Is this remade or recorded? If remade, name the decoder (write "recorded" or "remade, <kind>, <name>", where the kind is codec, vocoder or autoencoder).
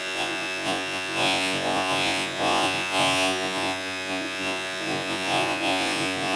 remade, vocoder, Vocos